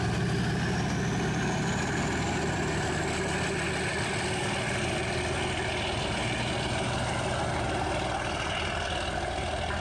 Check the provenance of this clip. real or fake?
real